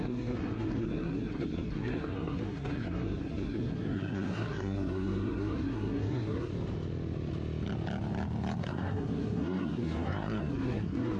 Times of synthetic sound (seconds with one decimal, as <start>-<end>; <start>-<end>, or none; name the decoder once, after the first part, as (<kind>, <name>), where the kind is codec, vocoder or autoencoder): 0.0-6.5 (codec, SNAC); 8.6-11.2